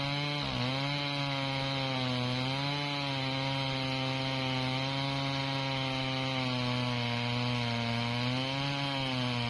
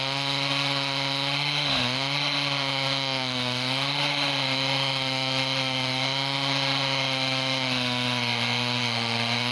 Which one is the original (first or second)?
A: first